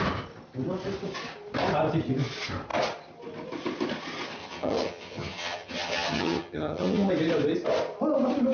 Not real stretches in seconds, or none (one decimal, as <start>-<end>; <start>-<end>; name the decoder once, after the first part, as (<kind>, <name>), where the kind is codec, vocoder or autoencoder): 4.4-7.1 (vocoder, HiFi-GAN)